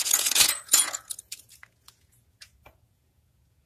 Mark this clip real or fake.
fake